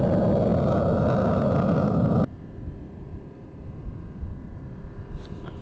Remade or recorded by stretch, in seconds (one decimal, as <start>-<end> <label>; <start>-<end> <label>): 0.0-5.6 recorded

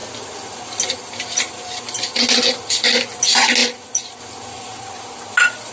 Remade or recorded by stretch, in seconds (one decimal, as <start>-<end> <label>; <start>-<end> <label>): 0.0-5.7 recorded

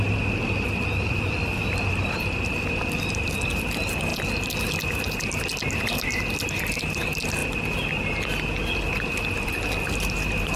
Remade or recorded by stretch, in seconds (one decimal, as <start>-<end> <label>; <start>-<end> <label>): 0.0-10.6 recorded